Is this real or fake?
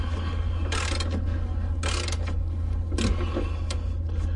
real